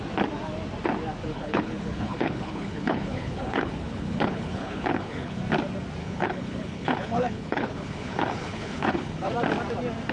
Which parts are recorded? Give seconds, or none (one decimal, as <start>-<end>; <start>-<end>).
0.0-1.3; 5.4-6.0; 9.3-10.1

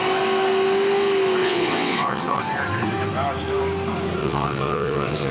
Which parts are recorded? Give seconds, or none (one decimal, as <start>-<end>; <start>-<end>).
0.0-1.4; 2.4-4.2

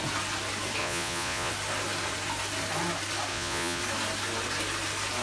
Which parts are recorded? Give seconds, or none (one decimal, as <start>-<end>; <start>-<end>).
0.0-0.8; 1.5-3.3; 3.8-5.2